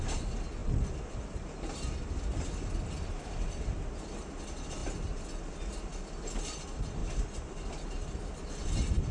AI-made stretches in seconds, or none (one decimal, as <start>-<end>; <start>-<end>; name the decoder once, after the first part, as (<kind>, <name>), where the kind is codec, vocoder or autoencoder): none